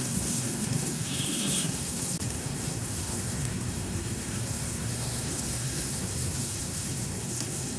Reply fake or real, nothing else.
fake